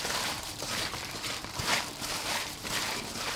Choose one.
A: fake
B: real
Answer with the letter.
A